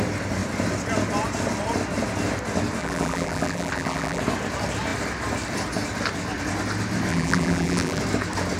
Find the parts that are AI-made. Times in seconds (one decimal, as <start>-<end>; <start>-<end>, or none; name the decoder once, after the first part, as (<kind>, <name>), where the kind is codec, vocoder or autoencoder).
2.8-4.2 (vocoder, BigVGAN v2); 7.1-8.0